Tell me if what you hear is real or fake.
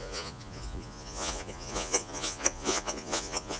fake